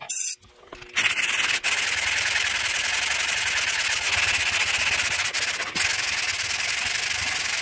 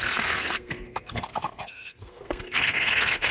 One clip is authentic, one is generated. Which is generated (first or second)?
second